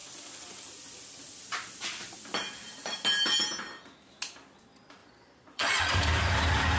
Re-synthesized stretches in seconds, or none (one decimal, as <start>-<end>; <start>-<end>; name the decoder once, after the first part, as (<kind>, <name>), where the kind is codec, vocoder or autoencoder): 5.0-5.9 (vocoder, Vocos)